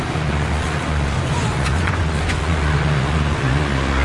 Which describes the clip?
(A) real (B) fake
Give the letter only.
B